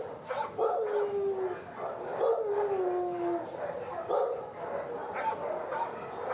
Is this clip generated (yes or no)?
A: no